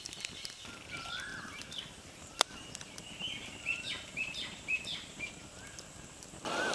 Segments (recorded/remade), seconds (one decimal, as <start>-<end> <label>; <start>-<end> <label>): 0.0-1.3 recorded; 1.3-5.3 remade; 5.3-6.7 recorded